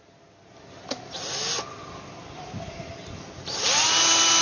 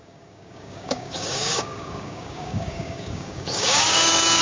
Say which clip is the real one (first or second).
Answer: first